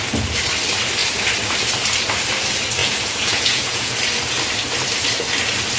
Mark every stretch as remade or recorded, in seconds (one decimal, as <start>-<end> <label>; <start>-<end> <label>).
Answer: 0.0-2.8 recorded; 2.8-4.0 remade; 4.0-5.8 recorded